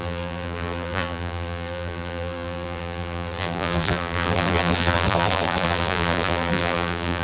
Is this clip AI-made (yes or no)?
yes